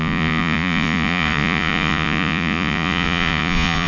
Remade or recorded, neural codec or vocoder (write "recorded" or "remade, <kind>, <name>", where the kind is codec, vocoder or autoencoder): remade, vocoder, Vocos